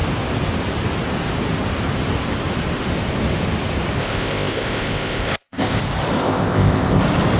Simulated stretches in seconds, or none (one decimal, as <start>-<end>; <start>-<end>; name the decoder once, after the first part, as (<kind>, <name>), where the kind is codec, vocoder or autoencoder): 4.0-5.8 (codec, ZipCodec); 6.2-7.0